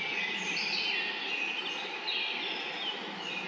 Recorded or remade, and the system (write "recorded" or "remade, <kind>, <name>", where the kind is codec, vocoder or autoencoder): recorded